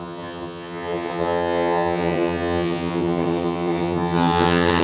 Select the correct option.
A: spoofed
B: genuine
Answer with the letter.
A